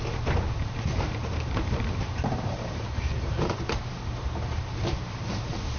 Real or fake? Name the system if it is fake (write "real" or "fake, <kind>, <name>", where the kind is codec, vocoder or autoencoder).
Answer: fake, vocoder, BigVGAN v2